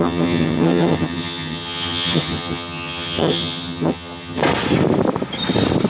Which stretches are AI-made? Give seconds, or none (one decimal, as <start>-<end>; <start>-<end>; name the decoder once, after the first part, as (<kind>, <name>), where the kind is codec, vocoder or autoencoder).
0.0-4.4 (vocoder, HiFi-GAN)